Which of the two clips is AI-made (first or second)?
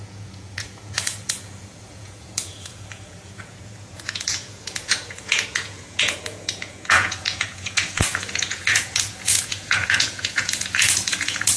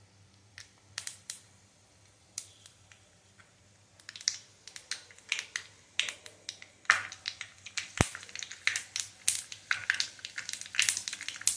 first